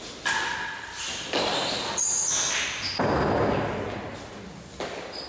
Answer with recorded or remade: recorded